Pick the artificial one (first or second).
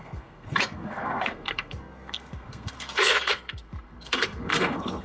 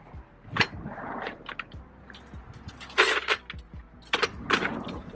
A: first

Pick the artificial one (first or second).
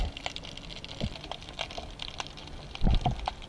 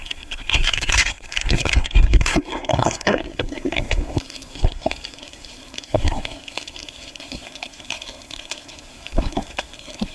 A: second